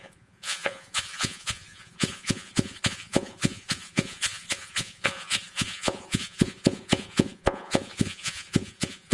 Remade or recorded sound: remade